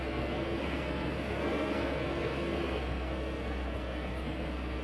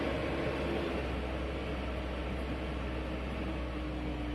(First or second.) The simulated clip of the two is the first